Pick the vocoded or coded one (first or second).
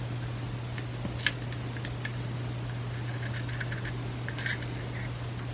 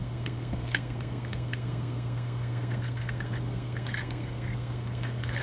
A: second